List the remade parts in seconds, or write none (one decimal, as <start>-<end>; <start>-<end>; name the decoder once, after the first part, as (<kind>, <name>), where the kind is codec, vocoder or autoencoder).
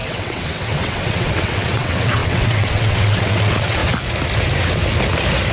0.0-3.8 (vocoder, WaveNeXt)